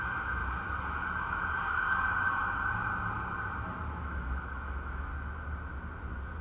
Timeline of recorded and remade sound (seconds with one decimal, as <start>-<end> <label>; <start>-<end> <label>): 0.0-0.4 remade; 0.4-4.0 recorded; 4.0-5.1 remade; 5.1-6.4 recorded